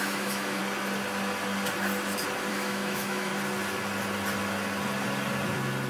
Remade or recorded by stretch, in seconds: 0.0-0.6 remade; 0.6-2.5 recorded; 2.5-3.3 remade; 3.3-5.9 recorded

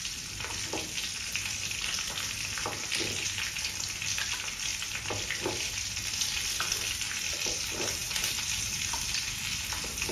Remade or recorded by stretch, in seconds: 0.0-10.1 recorded

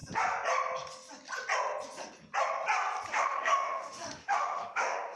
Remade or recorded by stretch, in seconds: 0.0-3.1 recorded; 3.1-5.2 remade

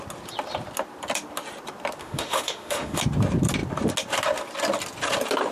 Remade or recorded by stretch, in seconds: 0.0-2.0 recorded; 2.0-3.0 remade; 3.0-5.5 recorded

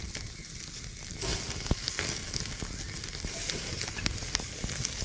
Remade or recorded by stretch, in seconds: 0.0-5.0 recorded

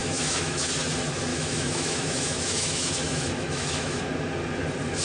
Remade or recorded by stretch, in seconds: 0.0-0.7 remade; 0.7-1.3 recorded; 1.3-4.0 remade; 4.0-5.0 recorded